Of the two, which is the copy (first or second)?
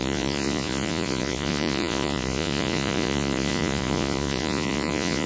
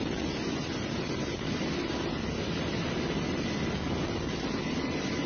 first